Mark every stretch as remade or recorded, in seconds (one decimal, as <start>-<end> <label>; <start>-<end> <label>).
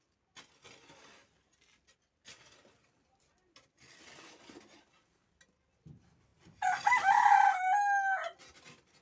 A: 0.0-9.0 recorded